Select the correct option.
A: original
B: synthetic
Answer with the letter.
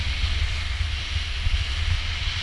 A